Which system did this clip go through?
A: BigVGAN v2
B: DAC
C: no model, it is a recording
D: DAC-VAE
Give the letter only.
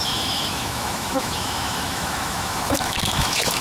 D